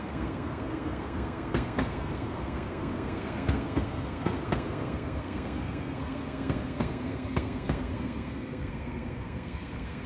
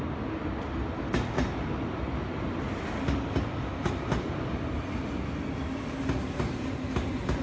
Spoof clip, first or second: first